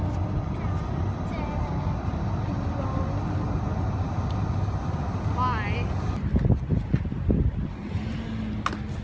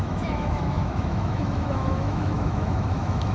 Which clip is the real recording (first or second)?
first